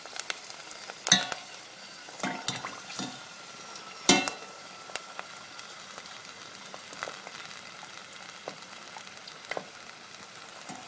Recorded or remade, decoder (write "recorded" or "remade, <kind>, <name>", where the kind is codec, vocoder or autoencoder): recorded